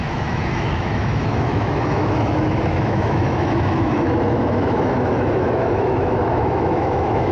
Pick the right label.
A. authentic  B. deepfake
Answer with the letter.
B